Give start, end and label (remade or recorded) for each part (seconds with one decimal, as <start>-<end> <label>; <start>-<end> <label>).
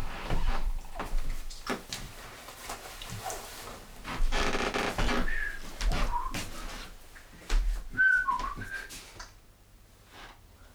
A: 0.0-4.8 remade; 4.8-10.7 recorded